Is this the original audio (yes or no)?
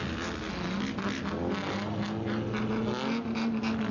yes